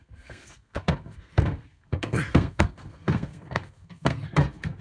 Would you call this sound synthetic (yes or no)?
yes